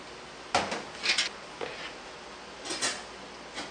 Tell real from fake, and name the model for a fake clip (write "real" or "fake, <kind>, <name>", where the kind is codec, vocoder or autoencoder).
real